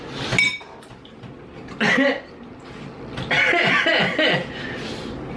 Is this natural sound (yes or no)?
yes